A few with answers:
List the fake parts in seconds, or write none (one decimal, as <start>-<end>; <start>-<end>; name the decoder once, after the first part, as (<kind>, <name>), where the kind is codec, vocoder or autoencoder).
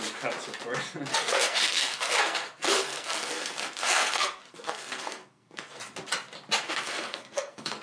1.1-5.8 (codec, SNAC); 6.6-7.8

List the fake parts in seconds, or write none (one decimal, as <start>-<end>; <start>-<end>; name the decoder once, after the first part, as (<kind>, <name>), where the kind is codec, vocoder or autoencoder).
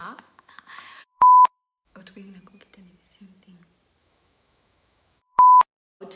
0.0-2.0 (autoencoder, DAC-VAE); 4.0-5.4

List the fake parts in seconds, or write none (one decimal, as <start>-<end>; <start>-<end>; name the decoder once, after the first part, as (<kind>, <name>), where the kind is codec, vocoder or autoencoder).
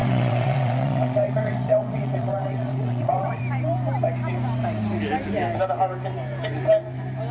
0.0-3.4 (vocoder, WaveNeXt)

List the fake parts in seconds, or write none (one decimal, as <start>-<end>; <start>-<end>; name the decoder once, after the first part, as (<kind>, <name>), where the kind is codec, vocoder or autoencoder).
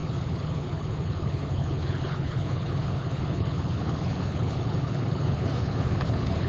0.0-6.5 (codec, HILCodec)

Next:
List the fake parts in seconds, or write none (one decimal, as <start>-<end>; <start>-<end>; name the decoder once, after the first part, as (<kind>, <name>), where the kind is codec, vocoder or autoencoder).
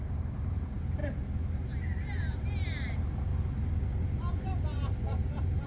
0.0-1.0 (vocoder, BigVGAN v2); 2.4-3.3; 4.3-5.7